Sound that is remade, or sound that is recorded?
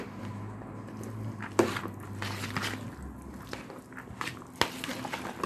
recorded